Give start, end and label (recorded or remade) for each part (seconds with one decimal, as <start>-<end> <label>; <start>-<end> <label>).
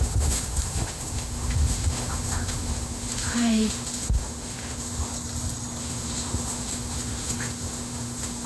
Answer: 0.0-5.1 remade; 5.1-5.8 recorded; 5.8-8.5 remade